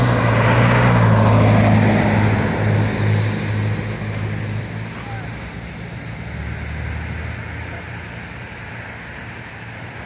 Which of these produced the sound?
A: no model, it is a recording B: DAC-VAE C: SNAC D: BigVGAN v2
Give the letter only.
A